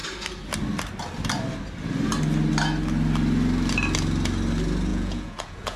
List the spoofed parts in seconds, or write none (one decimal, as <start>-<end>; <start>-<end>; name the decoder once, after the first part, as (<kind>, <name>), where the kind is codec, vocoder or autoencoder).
4.9-5.8 (vocoder, Vocos)